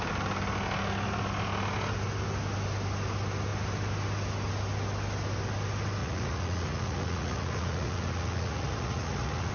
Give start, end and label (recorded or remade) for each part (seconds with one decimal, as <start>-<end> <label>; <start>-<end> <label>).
0.0-6.0 recorded; 6.0-9.5 remade